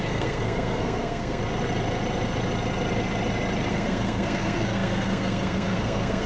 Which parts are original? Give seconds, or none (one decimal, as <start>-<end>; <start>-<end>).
1.4-3.7